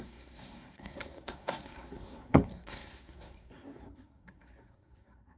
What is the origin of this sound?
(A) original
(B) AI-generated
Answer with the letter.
B